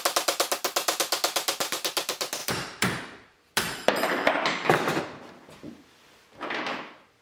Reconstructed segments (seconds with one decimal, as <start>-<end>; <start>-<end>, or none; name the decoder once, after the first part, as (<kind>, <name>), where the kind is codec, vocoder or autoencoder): 2.4-5.0 (vocoder, BigVGAN v2)